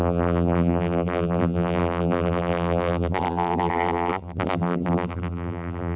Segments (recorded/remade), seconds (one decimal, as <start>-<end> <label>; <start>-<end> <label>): 0.0-6.0 remade